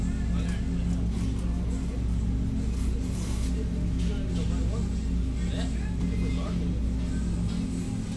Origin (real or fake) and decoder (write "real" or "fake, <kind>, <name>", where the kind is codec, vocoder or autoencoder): real